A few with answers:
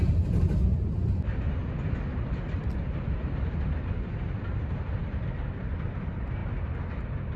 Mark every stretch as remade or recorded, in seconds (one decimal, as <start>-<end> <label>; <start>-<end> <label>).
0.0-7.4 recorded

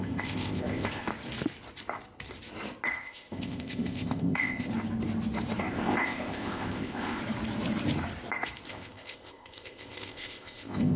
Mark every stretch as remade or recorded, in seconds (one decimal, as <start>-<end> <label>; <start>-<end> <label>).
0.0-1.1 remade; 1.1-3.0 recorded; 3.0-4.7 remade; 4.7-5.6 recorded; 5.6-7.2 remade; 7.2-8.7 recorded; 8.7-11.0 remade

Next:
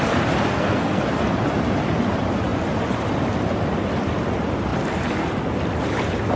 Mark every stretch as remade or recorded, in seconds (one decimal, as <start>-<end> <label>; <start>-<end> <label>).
0.0-0.5 recorded; 0.5-1.0 remade; 1.0-6.4 recorded